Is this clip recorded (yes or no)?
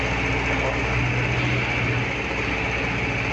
yes